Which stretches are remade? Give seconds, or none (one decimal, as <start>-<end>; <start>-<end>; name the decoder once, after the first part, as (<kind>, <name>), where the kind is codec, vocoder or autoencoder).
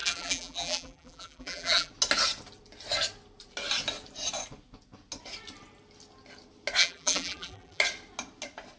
0.0-1.9 (vocoder, BigVGAN v2); 6.8-7.8